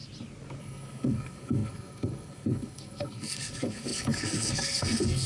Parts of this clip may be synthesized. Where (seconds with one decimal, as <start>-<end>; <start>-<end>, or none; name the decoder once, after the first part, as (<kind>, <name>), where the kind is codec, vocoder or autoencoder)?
0.6-5.3 (codec, SNAC)